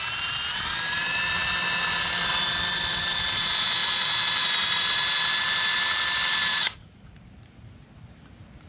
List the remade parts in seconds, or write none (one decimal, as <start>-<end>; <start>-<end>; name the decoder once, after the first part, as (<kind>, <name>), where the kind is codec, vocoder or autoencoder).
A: 6.5-7.0 (vocoder, Vocos)